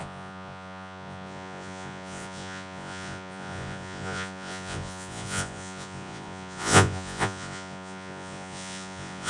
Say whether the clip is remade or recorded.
remade